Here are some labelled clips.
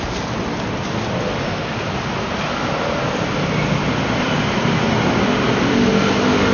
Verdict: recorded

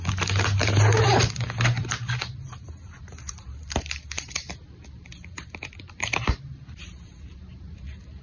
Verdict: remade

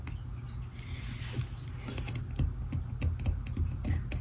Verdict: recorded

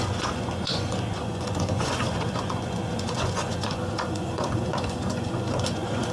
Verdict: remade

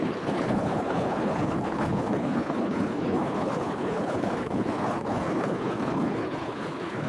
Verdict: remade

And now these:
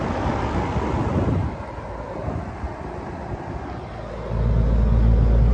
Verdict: recorded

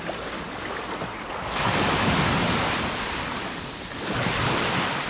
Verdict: recorded